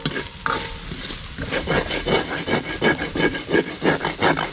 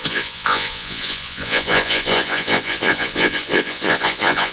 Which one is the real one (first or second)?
first